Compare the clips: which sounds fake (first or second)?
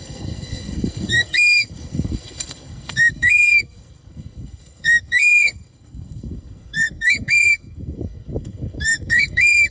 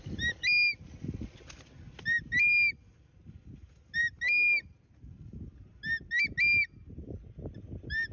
first